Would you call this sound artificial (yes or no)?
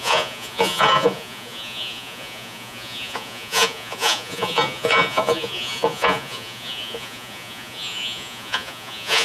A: yes